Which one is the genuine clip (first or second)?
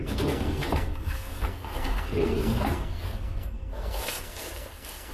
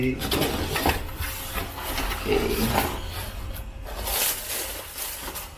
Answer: second